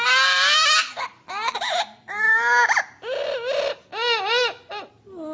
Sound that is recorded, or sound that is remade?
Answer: recorded